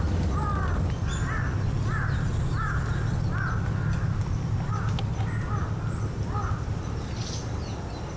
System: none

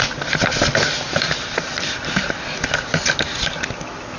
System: none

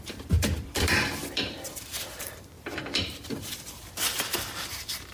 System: vocoder, BigVGAN v2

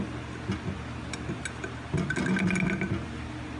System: none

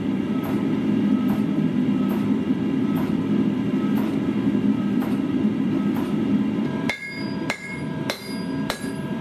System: vocoder, BigVGAN v2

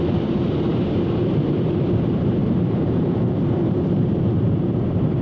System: vocoder, BigVGAN v2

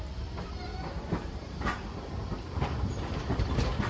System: vocoder, BigVGAN v2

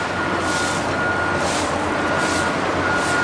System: none